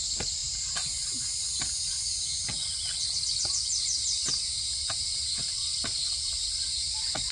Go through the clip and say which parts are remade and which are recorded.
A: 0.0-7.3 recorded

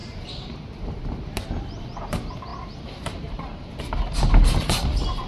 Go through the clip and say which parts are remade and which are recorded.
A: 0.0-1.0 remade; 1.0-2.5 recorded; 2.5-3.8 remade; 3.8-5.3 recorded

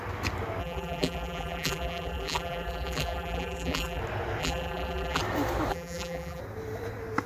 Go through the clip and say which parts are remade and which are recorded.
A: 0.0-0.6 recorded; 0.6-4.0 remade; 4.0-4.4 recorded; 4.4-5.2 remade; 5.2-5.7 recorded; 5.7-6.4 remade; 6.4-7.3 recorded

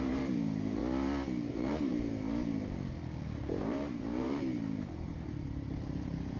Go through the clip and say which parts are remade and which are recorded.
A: 0.0-0.8 remade; 0.8-1.5 recorded; 1.5-1.9 remade; 1.9-3.6 recorded; 3.6-6.4 remade